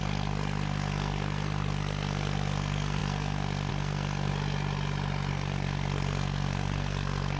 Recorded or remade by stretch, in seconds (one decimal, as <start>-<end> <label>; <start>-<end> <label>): 0.0-4.3 remade; 4.3-5.3 recorded; 5.3-7.4 remade